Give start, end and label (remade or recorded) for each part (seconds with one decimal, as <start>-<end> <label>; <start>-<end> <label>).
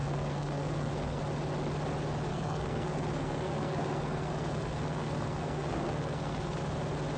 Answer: 0.0-1.2 remade; 1.2-2.3 recorded; 2.3-6.6 remade; 6.6-7.2 recorded